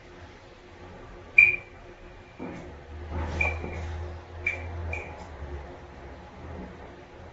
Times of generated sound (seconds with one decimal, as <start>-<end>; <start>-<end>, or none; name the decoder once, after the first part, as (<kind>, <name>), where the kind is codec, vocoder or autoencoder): none